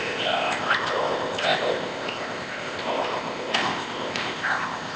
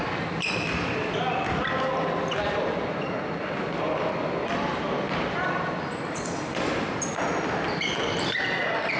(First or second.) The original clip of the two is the second